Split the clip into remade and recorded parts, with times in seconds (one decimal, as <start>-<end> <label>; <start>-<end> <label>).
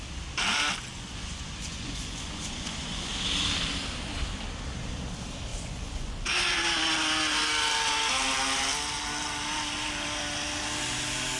0.0-0.9 recorded; 0.9-3.1 remade; 3.1-5.5 recorded; 5.5-6.6 remade; 6.6-11.4 recorded